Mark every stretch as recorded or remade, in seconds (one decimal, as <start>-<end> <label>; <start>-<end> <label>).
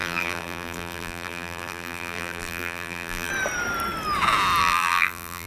0.0-3.3 remade; 3.3-4.6 recorded; 4.6-5.5 remade